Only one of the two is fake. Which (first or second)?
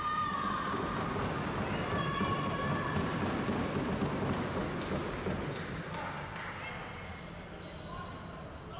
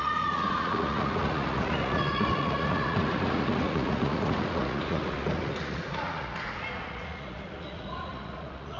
second